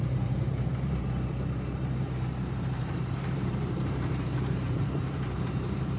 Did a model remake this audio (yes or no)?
yes